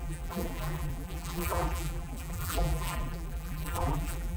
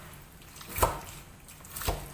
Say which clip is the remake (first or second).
first